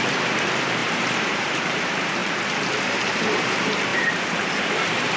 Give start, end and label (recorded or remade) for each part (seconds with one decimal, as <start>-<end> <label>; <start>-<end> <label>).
0.0-2.2 remade; 2.2-2.8 recorded; 2.8-5.2 remade